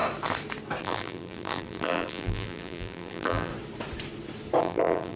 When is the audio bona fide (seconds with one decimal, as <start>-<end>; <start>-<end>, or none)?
0.0-0.8; 3.5-4.6